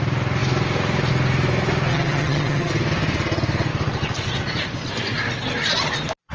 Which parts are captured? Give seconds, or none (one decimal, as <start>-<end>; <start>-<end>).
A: 0.0-1.9; 2.7-6.3